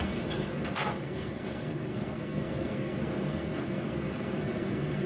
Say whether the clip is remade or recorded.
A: remade